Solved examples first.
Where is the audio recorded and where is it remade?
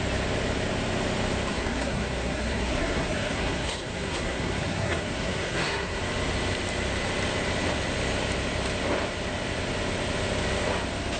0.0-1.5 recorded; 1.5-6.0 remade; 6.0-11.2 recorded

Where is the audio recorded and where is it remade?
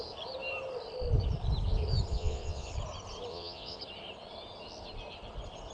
0.0-2.1 recorded; 2.1-2.7 remade; 2.7-3.3 recorded; 3.3-3.8 remade; 3.8-5.7 recorded